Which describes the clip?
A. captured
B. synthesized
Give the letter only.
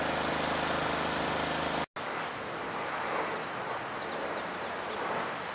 A